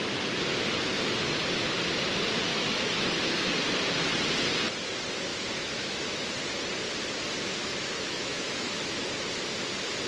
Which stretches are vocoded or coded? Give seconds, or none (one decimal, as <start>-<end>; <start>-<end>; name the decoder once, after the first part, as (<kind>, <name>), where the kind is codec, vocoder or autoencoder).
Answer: 2.5-3.0 (autoencoder, DAC-VAE); 5.3-6.3; 7.6-9.0